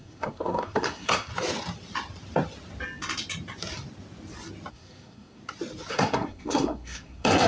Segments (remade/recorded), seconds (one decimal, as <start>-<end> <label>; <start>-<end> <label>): 0.0-1.3 remade; 1.3-4.7 recorded; 4.7-5.4 remade; 5.4-5.9 recorded; 5.9-7.5 remade